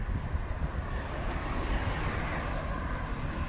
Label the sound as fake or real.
real